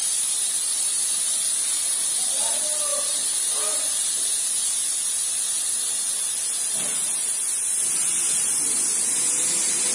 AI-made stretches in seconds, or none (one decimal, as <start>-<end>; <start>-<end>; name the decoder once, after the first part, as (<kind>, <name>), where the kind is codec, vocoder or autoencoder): 2.9-4.2 (vocoder, BigVGAN v2)